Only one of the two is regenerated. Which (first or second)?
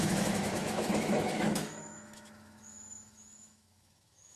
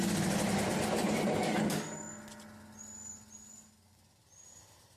first